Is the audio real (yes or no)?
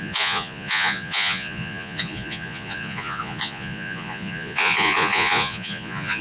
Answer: no